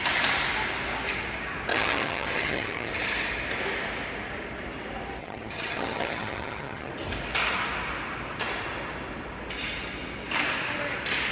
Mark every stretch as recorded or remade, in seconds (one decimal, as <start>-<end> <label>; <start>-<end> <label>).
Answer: 0.0-1.7 recorded; 1.7-2.9 remade; 2.9-5.2 recorded; 5.2-6.9 remade; 6.9-11.3 recorded